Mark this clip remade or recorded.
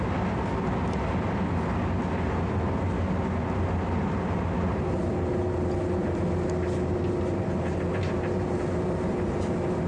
recorded